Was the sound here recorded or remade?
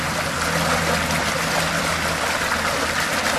recorded